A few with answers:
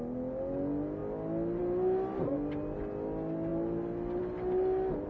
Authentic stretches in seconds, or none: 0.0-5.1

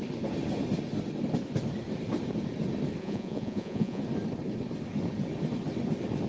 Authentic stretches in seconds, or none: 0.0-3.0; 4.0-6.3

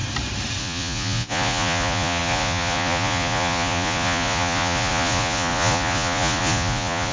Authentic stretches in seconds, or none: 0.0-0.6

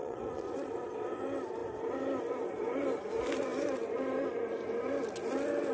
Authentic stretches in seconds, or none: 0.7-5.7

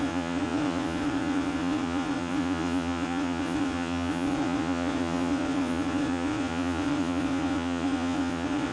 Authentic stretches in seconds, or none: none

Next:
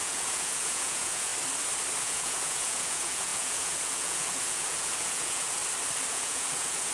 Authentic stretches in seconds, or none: 1.3-2.0; 5.6-6.1

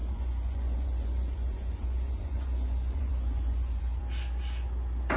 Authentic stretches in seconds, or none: 4.0-5.2

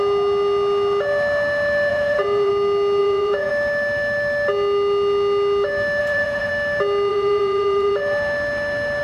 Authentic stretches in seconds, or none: 0.0-1.9; 2.5-3.0; 3.5-6.0; 6.5-7.1; 7.9-9.0